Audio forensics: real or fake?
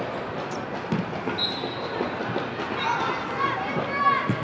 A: real